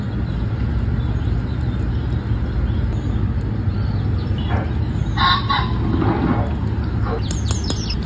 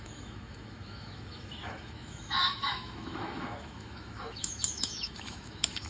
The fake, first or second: second